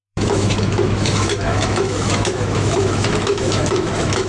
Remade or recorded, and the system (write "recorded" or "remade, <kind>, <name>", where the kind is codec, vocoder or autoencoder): remade, autoencoder, DAC-VAE